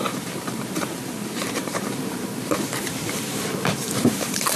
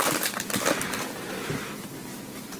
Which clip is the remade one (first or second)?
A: first